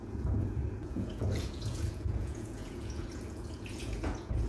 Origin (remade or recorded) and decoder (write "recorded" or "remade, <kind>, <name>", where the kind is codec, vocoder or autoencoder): remade, vocoder, Vocos